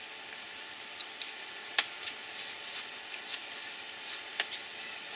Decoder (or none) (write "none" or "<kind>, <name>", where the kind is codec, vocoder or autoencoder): none